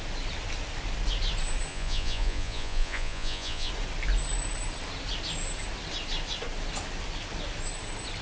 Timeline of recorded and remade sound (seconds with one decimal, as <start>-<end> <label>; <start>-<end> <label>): 0.0-1.7 recorded; 1.7-3.7 remade; 3.7-8.2 recorded